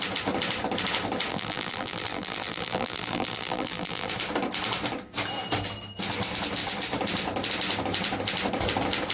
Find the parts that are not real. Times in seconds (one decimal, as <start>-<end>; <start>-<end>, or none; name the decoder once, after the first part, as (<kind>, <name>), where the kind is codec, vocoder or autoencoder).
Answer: 1.3-4.1 (vocoder, BigVGAN v2)